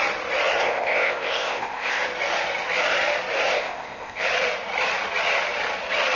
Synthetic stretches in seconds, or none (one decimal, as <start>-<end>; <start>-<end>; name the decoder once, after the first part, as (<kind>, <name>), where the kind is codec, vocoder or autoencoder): 0.6-2.0 (codec, ZipCodec); 3.5-4.2